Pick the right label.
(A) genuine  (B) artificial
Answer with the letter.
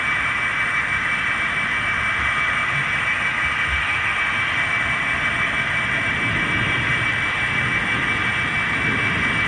A